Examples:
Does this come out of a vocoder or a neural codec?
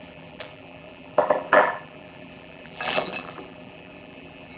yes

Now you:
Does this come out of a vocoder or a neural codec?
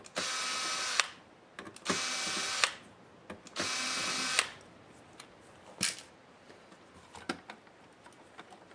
no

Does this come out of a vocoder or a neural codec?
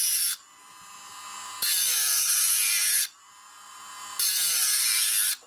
no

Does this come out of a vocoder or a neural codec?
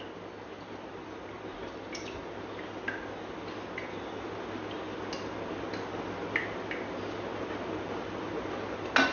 no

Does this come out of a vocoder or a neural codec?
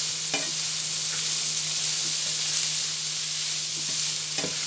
no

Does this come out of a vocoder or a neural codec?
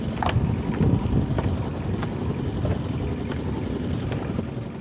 no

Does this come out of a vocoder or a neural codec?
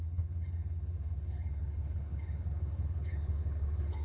yes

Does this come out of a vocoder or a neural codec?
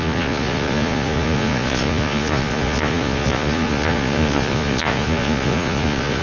yes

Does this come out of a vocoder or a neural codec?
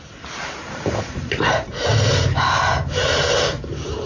yes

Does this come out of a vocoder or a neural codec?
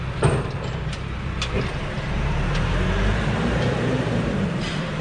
yes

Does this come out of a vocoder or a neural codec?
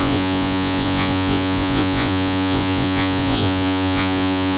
yes